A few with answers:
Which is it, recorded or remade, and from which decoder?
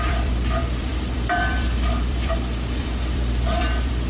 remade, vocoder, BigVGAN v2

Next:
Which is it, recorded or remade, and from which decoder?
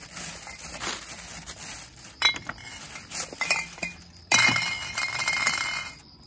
recorded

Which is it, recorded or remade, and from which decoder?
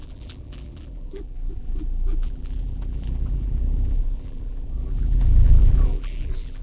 remade, vocoder, BigVGAN v2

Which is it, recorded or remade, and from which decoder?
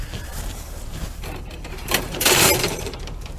remade, vocoder, BigVGAN v2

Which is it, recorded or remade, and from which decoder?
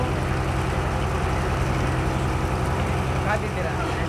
recorded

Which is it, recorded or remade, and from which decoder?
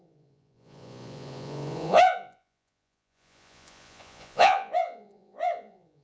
remade, vocoder, Vocos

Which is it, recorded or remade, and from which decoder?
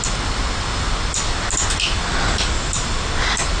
recorded